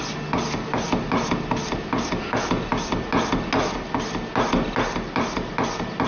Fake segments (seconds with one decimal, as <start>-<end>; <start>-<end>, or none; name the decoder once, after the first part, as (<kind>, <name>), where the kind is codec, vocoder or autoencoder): none